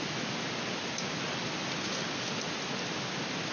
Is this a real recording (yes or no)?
yes